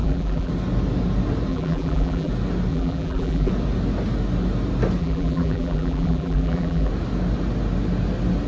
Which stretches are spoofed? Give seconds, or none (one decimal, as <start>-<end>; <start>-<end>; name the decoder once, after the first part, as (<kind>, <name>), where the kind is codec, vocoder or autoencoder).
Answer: 0.0-0.5 (vocoder, BigVGAN v2); 1.5-2.3; 2.7-3.5; 5.0-6.9